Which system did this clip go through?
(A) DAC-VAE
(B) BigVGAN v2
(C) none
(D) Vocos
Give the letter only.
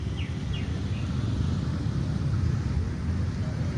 C